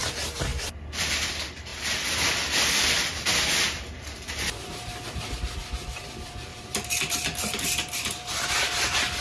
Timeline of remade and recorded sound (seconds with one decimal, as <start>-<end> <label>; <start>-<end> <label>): 0.0-9.2 remade